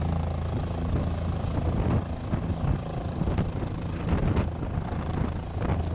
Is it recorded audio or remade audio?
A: recorded